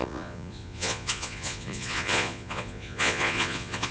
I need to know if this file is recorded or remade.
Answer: remade